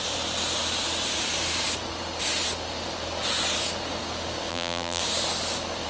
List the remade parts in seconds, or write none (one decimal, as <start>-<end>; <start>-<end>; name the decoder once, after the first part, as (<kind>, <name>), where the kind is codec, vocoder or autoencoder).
4.5-5.0 (vocoder, BigVGAN v2)